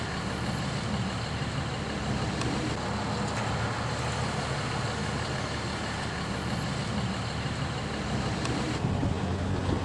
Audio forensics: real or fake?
real